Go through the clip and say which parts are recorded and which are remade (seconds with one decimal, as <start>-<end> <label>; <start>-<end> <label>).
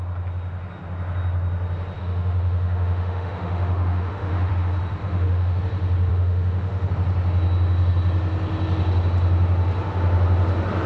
0.0-2.0 recorded; 2.0-4.5 remade; 4.5-5.0 recorded; 5.0-5.6 remade; 5.6-6.1 recorded; 6.1-6.9 remade; 6.9-10.9 recorded